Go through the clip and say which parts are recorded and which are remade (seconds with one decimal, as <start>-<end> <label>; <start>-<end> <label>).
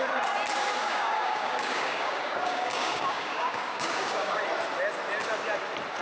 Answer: 0.0-0.8 recorded; 0.8-4.4 remade; 4.4-6.0 recorded